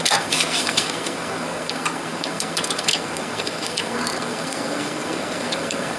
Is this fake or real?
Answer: fake